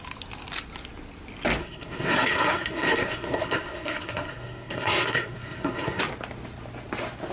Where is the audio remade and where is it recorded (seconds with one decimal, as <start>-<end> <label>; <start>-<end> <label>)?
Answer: 0.0-1.6 recorded; 1.6-6.0 remade; 6.0-7.3 recorded